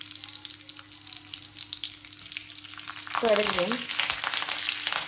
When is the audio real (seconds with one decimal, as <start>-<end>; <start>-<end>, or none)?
0.0-5.1